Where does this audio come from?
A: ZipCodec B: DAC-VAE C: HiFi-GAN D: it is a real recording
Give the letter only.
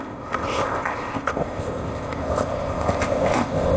A